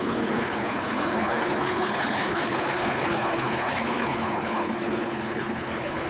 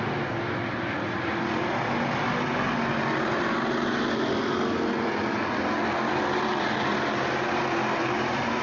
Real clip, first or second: second